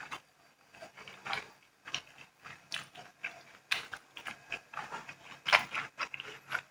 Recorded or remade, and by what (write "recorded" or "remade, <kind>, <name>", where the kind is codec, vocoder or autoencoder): recorded